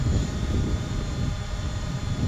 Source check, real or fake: fake